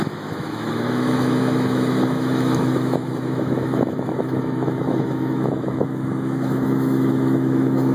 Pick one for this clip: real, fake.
fake